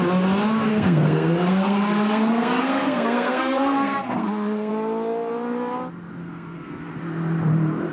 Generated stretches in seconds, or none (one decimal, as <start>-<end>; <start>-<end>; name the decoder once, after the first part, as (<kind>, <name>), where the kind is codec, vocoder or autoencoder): 0.7-4.7 (codec, SNAC); 6.2-6.9